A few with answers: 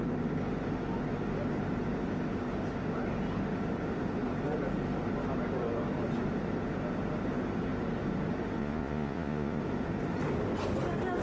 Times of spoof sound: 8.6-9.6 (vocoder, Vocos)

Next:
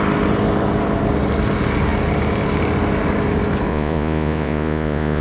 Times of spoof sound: 3.7-5.2 (vocoder, Vocos)

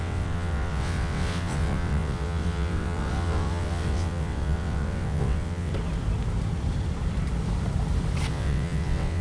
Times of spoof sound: 0.0-5.7 (vocoder, WaveNeXt); 8.3-9.2

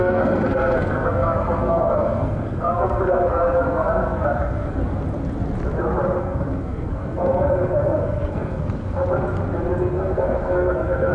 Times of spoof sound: 0.0-4.8 (codec, SNAC); 6.2-9.0; 9.8-11.1

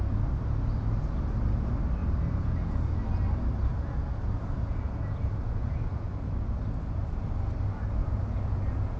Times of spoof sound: 2.0-3.0 (vocoder, Vocos); 3.7-6.1; 8.0-9.0